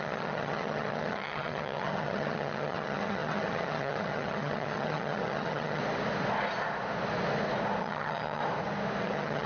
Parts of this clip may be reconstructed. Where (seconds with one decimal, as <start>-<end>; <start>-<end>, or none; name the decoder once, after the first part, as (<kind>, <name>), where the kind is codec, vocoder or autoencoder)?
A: 0.0-5.8 (vocoder, HiFi-GAN); 7.8-8.4; 9.0-9.5